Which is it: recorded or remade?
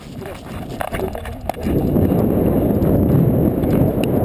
recorded